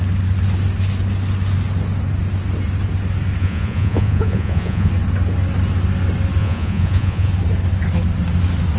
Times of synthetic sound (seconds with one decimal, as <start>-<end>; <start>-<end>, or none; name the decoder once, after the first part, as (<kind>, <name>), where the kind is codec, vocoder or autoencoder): 3.4-4.9 (vocoder, Vocos); 6.4-7.3